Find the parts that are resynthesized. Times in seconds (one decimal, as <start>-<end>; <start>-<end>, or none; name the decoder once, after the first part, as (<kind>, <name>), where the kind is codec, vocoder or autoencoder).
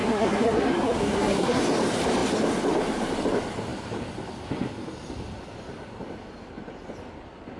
0.0-1.6 (codec, SNAC)